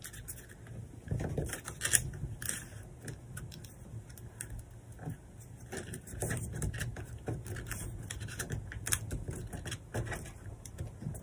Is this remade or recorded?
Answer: recorded